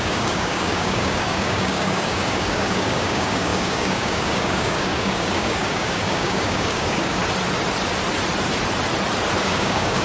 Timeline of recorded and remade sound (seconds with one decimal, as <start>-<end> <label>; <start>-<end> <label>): 0.0-7.2 remade; 7.2-9.4 recorded; 9.4-10.0 remade